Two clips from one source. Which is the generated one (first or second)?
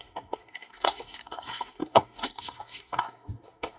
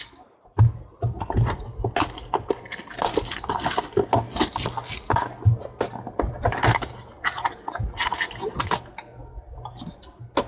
first